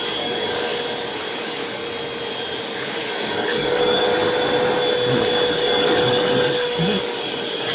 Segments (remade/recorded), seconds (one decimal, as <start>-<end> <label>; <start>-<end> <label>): 0.0-0.7 remade; 0.7-1.3 recorded; 1.3-1.8 remade; 1.8-2.6 recorded; 2.6-4.1 remade; 4.1-5.5 recorded; 5.5-7.7 remade